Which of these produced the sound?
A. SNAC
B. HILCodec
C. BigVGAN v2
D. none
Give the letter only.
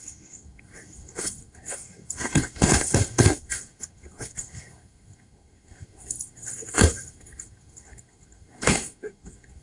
A